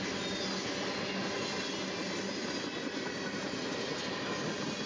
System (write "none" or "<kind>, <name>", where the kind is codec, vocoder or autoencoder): none